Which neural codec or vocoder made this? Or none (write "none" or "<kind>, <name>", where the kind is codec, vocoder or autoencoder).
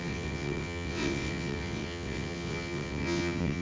vocoder, WaveNeXt